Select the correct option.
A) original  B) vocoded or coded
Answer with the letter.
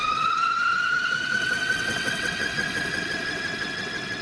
B